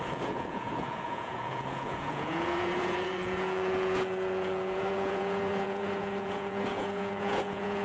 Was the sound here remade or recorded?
remade